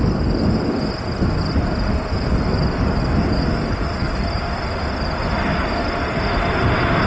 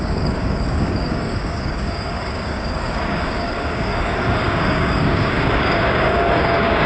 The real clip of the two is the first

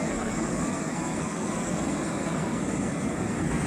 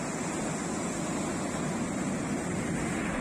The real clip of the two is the second